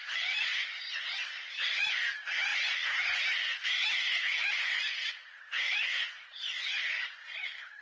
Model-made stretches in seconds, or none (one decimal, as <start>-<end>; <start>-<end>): none